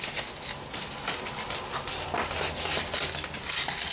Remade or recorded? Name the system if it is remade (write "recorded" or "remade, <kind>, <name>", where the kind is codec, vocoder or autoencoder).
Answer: recorded